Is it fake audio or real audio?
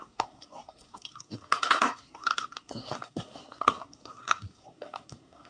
fake